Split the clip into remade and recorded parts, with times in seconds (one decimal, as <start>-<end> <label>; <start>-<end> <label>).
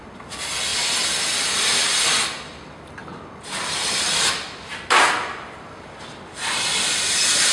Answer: 0.0-7.5 recorded